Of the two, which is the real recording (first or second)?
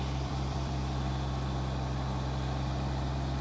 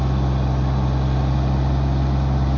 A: second